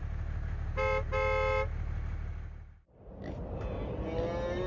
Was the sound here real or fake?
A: real